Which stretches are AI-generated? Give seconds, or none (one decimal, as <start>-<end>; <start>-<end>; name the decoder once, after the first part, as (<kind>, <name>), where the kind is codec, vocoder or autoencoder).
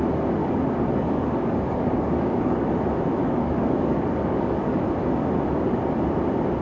0.4-2.7 (codec, DAC); 3.2-4.9